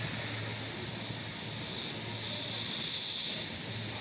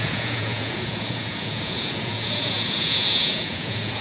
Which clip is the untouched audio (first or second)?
first